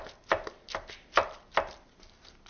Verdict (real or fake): real